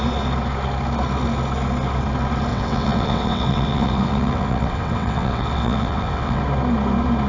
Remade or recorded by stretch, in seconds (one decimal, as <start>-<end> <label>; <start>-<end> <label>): 0.0-2.5 recorded; 2.5-6.4 remade; 6.4-7.3 recorded